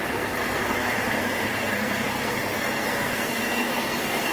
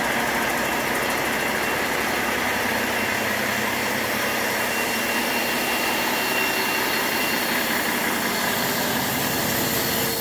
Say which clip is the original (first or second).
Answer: second